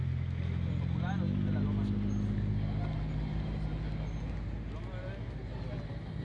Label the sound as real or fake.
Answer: real